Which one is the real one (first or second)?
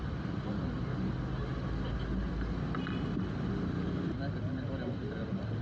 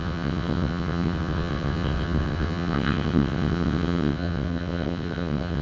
first